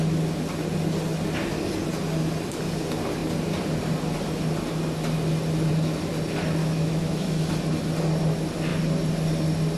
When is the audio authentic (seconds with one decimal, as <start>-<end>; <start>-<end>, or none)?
0.0-6.6; 7.4-9.8